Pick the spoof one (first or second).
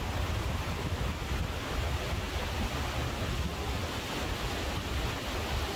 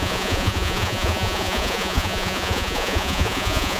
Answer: second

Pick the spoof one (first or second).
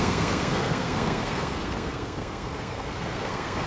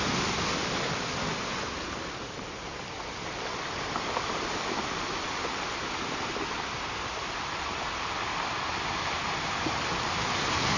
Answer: first